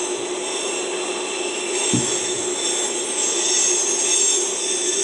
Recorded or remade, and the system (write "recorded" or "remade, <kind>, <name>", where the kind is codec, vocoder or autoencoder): recorded